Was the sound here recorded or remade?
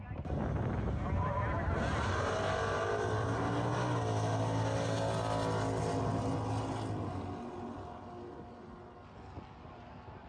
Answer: recorded